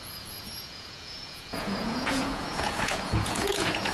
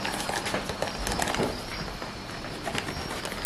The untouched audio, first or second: second